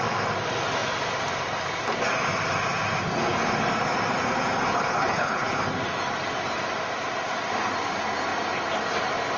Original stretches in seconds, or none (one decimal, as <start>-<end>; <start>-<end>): 0.0-4.7; 5.6-9.4